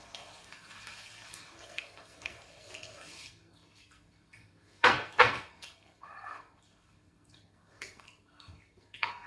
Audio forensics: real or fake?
fake